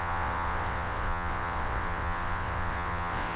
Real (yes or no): no